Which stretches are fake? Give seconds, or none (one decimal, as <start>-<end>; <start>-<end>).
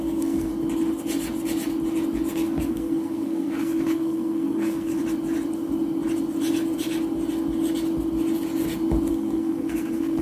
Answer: 0.0-0.5; 2.3-5.0; 9.1-10.2